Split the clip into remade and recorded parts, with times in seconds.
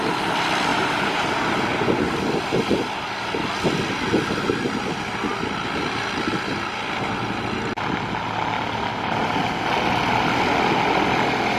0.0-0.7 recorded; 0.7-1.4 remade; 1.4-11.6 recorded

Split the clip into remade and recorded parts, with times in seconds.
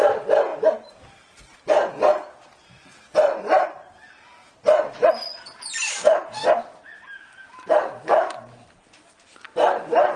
0.0-0.5 remade; 0.5-3.4 recorded; 3.4-4.4 remade; 4.4-5.6 recorded; 5.6-6.4 remade; 6.4-7.8 recorded; 7.8-10.2 remade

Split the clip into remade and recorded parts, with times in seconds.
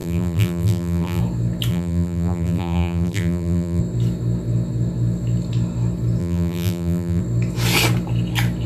0.0-1.2 remade; 1.2-1.7 recorded; 1.7-3.8 remade; 3.8-6.2 recorded; 6.2-7.2 remade; 7.2-8.7 recorded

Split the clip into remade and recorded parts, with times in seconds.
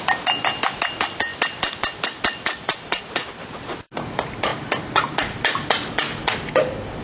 0.0-1.3 recorded; 1.3-3.5 remade; 3.5-7.0 recorded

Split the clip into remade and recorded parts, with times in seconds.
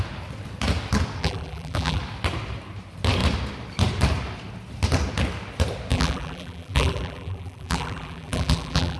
0.0-1.2 recorded; 1.2-2.0 remade; 2.0-5.9 recorded; 5.9-9.0 remade